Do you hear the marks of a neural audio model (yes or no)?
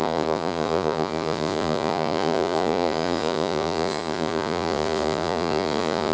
yes